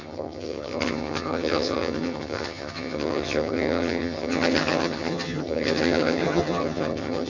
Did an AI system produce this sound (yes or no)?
yes